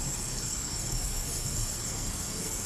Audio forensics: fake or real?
fake